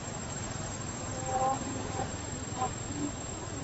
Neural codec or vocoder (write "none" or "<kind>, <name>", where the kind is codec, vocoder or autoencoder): none